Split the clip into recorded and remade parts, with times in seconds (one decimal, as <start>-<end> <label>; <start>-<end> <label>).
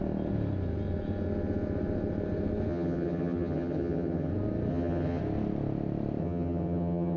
0.0-2.7 recorded; 2.7-4.3 remade; 4.3-4.7 recorded; 4.7-5.2 remade; 5.2-6.2 recorded; 6.2-7.2 remade